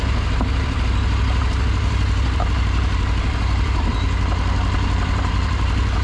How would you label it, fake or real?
fake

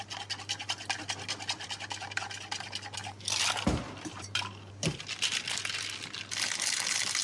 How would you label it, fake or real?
real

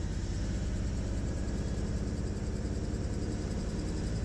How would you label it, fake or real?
fake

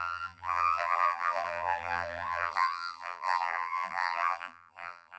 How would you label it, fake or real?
fake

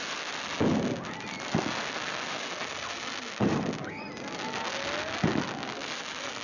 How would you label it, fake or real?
real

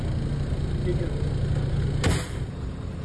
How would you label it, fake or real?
real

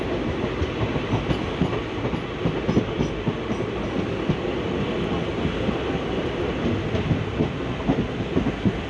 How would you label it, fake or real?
real